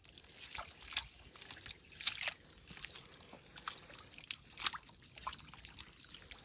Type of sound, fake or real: real